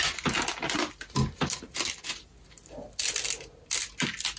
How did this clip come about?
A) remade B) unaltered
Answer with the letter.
B